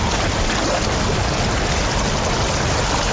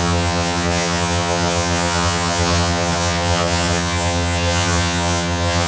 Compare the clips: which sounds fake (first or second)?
second